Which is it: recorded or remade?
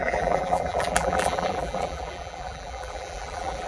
remade